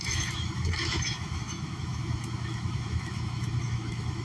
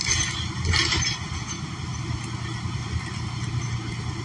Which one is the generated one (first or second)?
first